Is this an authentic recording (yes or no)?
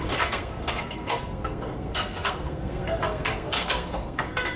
no